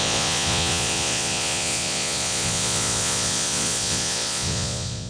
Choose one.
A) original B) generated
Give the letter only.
B